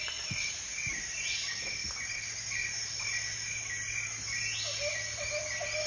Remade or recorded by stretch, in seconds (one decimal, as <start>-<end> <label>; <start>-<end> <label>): 0.0-5.9 recorded